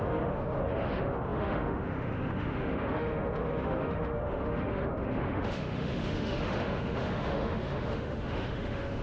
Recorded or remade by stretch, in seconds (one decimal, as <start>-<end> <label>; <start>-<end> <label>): 0.0-9.0 remade